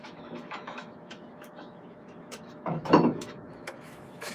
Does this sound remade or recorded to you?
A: remade